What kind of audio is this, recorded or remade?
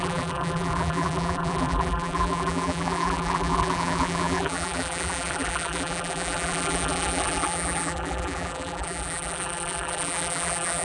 remade